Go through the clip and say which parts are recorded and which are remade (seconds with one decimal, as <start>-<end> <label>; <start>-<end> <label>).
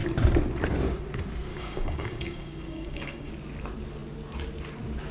0.0-1.5 recorded; 1.5-3.3 remade; 3.3-5.1 recorded